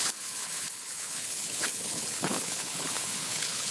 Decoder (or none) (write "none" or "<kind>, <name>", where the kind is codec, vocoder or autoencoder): codec, HILCodec